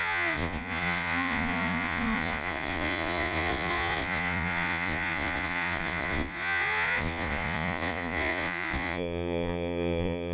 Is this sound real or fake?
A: fake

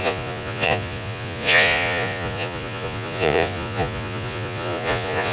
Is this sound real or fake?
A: fake